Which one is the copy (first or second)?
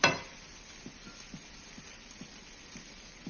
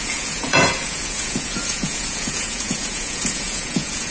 second